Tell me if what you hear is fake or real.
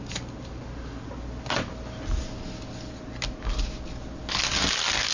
real